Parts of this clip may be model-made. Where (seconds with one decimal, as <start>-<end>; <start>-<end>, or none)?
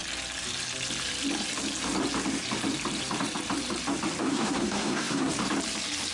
4.2-5.3